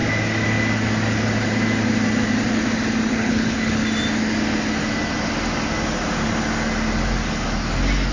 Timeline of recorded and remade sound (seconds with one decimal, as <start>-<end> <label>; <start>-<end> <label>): 0.0-3.1 recorded; 3.1-3.8 remade; 3.8-8.1 recorded